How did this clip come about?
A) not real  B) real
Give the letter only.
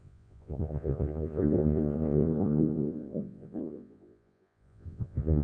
A